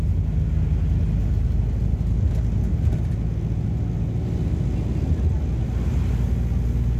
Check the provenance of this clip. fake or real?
real